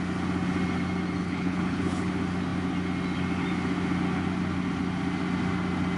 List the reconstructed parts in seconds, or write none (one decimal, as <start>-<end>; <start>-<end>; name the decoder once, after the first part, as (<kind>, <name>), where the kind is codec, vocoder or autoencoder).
1.2-2.1 (codec, HILCodec)